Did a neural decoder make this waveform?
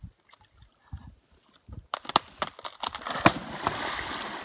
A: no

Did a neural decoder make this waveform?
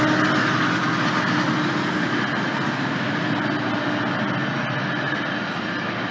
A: no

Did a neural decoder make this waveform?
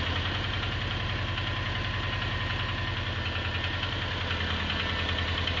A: no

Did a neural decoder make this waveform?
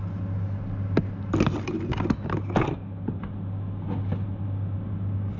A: no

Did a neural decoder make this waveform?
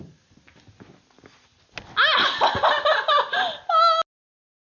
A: no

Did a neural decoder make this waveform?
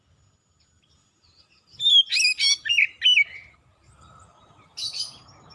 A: no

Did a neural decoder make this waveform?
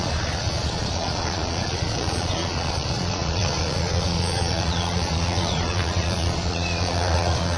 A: yes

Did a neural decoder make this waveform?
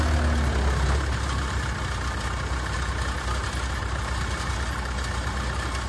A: no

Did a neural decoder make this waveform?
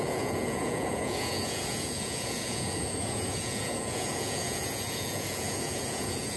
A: yes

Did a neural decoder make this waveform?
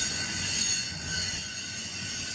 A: yes